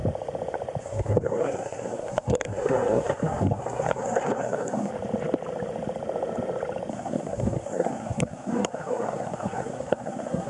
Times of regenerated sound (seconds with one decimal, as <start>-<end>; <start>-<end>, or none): 0.8-4.9; 6.9-10.5